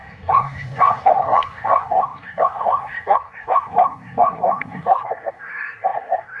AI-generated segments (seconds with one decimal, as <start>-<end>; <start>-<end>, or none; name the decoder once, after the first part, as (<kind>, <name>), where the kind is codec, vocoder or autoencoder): 0.0-6.4 (codec, SNAC)